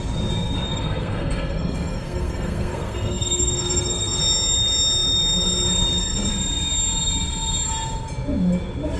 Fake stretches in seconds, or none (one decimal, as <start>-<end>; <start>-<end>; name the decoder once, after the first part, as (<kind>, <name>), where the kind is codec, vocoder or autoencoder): 0.7-4.2 (codec, SNAC)